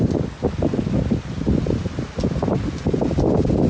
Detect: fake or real real